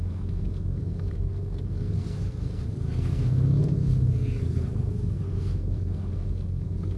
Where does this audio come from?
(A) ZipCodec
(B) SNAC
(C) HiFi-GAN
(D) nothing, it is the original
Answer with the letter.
B